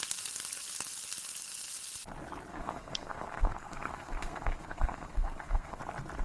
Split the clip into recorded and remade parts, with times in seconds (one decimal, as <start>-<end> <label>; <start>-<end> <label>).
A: 0.0-2.5 recorded; 2.5-5.8 remade; 5.8-6.2 recorded